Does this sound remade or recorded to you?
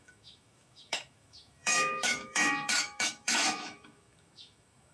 remade